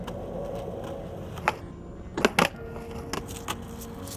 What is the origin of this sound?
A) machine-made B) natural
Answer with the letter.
B